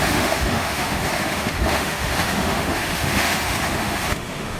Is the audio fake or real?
fake